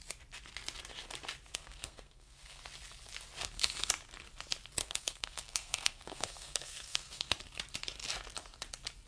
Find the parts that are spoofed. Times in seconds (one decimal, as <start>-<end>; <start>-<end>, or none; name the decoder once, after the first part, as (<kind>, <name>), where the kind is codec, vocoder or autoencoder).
1.5-2.6 (codec, SNAC); 3.4-3.9; 4.8-7.3